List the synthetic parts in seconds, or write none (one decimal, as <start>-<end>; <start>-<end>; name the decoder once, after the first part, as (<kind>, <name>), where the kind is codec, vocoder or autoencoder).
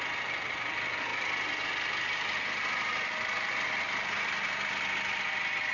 none